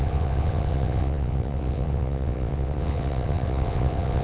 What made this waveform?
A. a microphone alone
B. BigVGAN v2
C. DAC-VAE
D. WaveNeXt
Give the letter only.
D